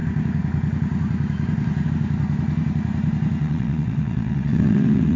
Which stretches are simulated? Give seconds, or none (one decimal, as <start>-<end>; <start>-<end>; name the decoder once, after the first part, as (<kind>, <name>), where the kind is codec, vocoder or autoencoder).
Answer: 3.4-5.2 (vocoder, WaveNeXt)